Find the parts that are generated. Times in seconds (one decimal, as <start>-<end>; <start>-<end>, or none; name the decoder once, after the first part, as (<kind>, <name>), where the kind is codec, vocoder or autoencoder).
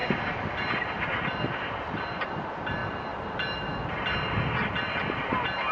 2.8-3.9 (vocoder, BigVGAN v2)